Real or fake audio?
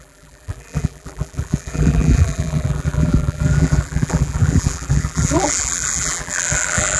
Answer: fake